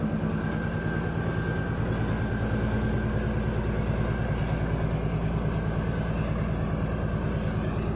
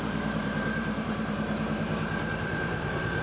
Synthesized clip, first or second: second